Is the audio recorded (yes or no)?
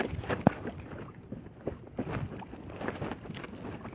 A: yes